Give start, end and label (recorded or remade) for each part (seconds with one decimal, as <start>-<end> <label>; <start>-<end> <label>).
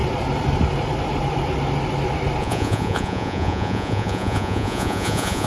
0.0-2.4 recorded; 2.4-5.5 remade